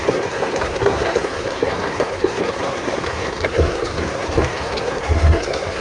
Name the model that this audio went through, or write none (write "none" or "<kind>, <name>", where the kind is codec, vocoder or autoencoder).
codec, SNAC